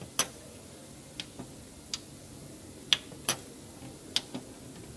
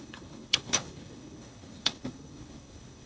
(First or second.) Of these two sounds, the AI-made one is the second